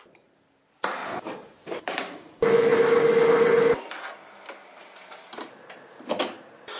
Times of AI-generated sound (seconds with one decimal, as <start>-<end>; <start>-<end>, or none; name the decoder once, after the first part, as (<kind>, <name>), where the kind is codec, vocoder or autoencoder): 1.0-1.9 (vocoder, BigVGAN v2)